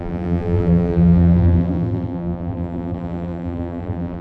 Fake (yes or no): yes